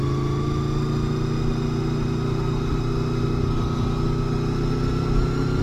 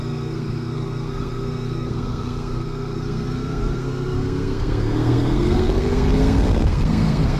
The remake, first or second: second